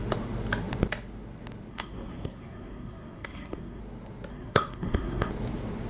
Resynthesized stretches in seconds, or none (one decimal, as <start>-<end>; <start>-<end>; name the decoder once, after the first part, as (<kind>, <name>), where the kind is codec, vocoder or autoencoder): 1.7-3.8 (codec, SNAC); 4.3-5.3